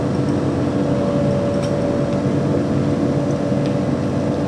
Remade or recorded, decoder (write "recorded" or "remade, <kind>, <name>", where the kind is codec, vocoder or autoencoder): recorded